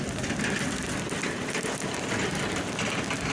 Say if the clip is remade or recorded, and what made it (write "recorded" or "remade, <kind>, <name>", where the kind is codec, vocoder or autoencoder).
recorded